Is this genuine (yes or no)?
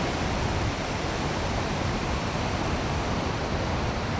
yes